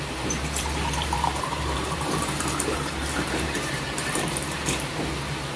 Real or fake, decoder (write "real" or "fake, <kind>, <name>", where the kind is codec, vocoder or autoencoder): fake, vocoder, BigVGAN v2